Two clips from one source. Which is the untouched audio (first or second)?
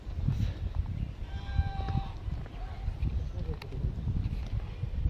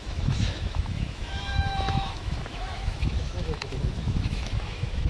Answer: first